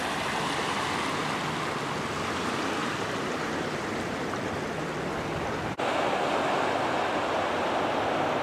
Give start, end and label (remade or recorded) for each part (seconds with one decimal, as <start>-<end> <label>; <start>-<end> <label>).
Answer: 0.0-8.4 recorded